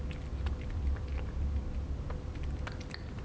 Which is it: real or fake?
real